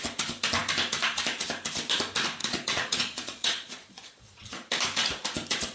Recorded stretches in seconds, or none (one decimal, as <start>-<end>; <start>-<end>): 0.0-2.4; 4.7-5.7